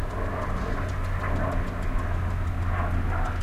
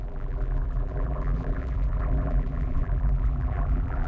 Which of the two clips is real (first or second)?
first